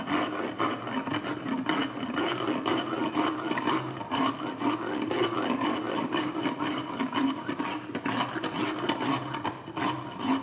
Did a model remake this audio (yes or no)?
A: no